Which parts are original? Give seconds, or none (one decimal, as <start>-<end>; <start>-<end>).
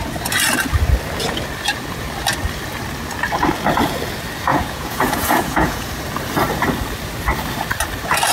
0.0-4.5; 5.9-8.3